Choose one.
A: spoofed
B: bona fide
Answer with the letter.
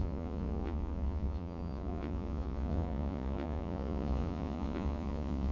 A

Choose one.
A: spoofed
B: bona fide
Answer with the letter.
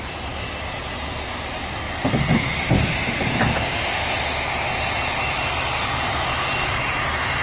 B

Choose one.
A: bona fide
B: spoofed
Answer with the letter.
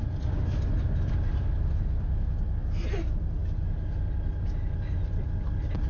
A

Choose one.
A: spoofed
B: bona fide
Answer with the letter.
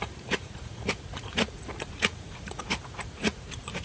A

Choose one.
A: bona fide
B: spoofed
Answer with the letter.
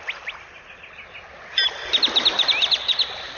A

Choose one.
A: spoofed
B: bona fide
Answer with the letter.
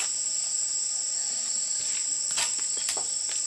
B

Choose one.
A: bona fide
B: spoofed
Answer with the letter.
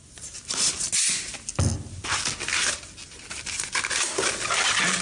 A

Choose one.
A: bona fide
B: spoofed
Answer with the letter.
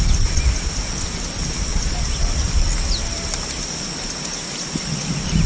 A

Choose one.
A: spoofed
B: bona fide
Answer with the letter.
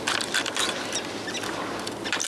B